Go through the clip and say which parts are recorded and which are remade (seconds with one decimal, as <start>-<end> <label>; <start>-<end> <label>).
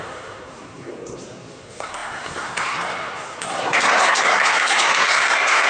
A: 0.0-5.7 remade